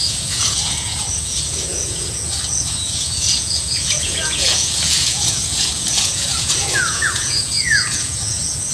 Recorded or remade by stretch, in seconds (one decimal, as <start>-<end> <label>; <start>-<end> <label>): 0.0-8.7 remade